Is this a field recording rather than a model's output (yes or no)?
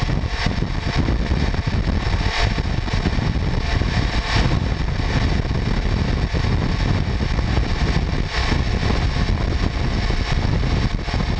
yes